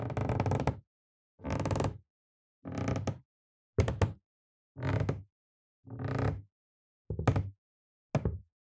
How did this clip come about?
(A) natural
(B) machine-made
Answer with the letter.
A